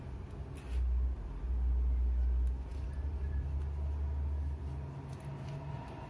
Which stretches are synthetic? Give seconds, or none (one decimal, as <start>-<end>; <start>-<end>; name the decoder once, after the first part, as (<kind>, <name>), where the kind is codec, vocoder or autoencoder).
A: none